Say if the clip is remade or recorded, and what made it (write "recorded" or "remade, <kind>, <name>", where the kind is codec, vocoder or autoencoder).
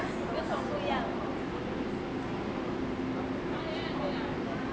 recorded